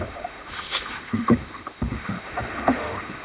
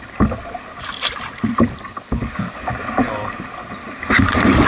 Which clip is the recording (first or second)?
second